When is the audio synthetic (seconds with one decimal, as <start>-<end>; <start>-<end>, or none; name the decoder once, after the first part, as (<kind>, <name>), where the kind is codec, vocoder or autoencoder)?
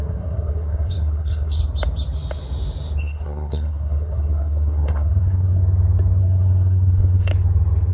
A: 0.0-1.6 (codec, SNAC); 3.0-5.6; 6.2-7.3